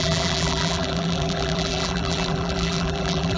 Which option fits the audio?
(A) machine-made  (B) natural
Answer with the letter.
A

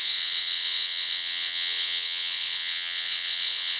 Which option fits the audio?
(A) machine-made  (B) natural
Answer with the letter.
A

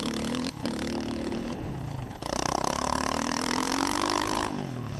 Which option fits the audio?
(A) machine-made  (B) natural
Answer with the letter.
A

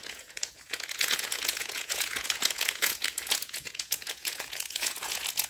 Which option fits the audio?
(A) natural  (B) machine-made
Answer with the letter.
B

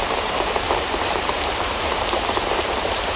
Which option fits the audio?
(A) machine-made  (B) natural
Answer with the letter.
A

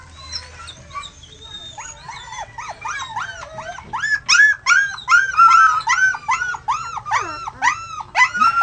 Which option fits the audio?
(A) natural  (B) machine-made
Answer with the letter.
A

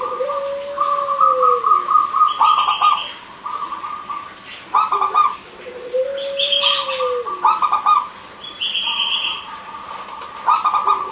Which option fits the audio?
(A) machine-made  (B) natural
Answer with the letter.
B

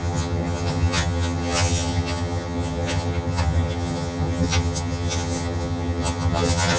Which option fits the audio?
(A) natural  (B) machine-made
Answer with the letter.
B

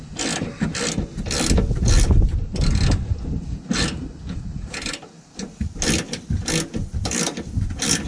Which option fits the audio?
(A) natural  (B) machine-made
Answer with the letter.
A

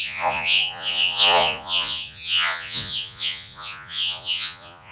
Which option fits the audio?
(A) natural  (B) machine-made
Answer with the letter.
B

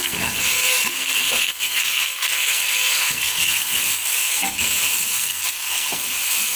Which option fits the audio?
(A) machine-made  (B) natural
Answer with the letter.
A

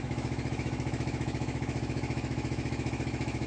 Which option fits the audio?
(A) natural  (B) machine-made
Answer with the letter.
B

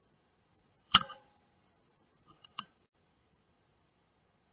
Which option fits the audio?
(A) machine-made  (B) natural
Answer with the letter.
A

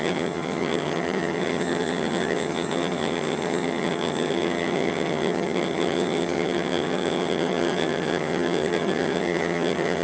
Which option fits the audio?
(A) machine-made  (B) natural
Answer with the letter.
A